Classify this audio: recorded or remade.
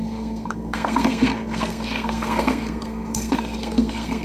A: remade